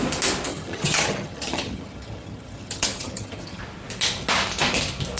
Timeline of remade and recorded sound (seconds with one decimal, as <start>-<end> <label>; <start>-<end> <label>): 0.0-0.5 recorded; 0.5-3.6 remade; 3.6-5.2 recorded